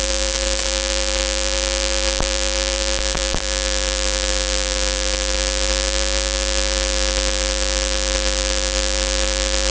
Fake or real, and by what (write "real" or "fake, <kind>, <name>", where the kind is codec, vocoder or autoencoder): fake, autoencoder, DAC-VAE